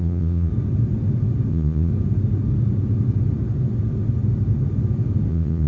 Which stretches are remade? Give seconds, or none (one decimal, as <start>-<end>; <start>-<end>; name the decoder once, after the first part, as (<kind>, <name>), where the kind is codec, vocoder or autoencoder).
0.0-0.5 (vocoder, Vocos); 1.5-1.9; 5.3-5.7